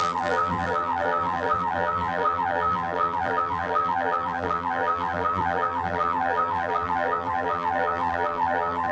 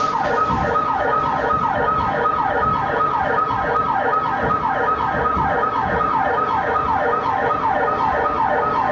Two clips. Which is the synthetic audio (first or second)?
first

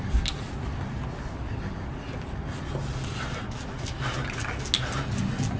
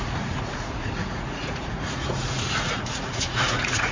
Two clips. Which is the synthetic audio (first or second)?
second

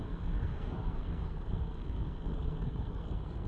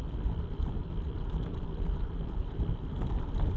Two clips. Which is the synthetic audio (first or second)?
first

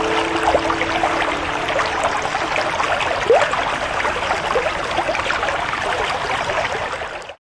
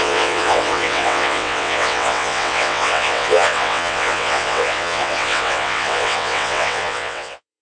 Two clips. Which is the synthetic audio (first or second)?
second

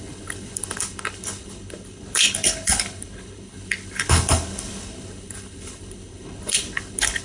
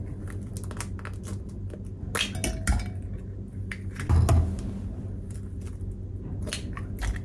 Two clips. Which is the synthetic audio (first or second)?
first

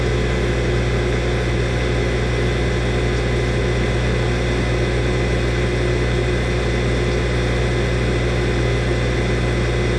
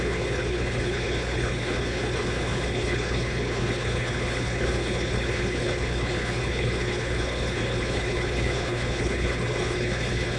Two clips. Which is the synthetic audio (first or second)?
second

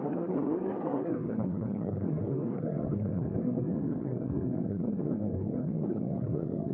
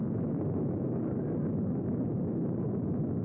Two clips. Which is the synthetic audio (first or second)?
first